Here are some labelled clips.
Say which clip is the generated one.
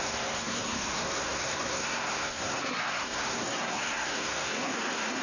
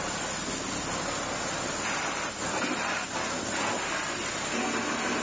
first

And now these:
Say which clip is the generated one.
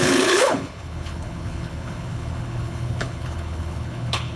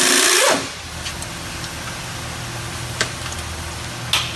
first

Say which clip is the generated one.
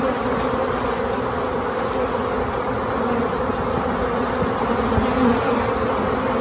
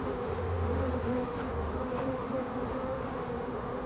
second